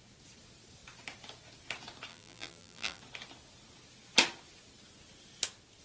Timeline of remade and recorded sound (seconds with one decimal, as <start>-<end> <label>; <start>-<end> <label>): 0.0-2.1 recorded; 2.1-3.0 remade; 3.0-5.8 recorded